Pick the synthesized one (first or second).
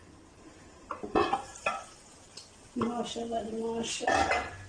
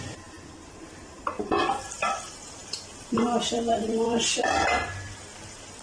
second